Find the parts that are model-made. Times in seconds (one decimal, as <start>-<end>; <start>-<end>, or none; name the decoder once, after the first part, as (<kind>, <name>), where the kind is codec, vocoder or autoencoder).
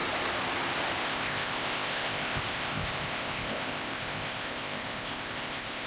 1.0-5.9 (codec, ZipCodec)